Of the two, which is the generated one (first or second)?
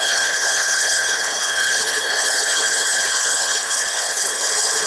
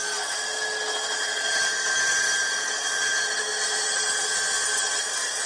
first